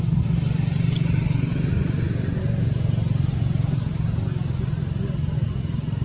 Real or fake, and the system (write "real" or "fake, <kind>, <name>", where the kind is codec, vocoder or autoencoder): real